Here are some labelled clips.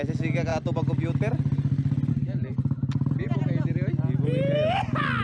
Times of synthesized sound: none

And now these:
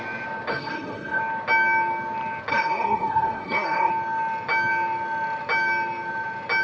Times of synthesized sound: 0.5-1.2 (codec, SNAC); 2.5-3.9

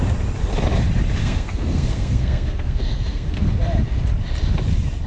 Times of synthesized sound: 1.2-3.5 (codec, SNAC)

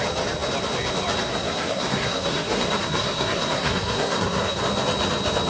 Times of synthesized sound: 1.3-4.6 (codec, SNAC)

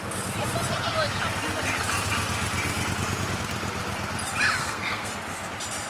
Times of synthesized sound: 4.6-5.1 (codec, SNAC)

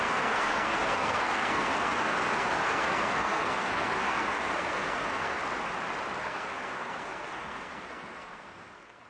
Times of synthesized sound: 0.0-5.4 (codec, SNAC); 6.2-9.1

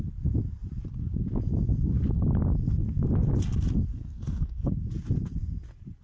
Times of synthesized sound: 3.9-4.7 (codec, SNAC)